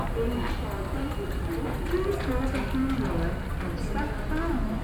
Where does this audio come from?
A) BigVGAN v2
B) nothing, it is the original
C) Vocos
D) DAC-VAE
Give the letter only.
B